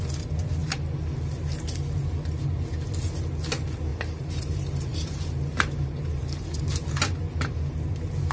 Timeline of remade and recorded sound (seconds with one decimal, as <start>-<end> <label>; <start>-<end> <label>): 0.0-3.9 recorded; 3.9-6.6 remade; 6.6-8.3 recorded